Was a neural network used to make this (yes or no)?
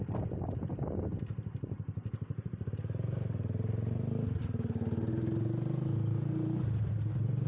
no